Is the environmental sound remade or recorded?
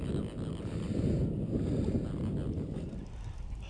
recorded